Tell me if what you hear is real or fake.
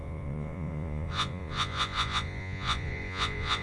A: fake